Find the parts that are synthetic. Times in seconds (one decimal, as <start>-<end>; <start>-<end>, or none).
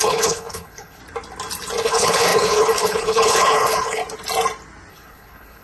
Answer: 0.0-1.0; 1.8-4.0; 4.9-5.6